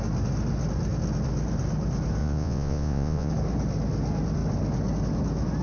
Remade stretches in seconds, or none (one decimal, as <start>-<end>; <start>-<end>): 2.2-3.3